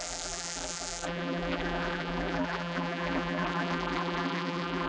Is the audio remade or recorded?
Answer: remade